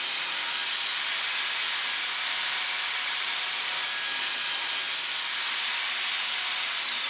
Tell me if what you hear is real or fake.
real